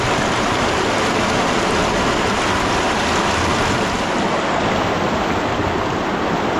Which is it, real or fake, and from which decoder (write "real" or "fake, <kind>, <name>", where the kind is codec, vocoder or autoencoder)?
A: real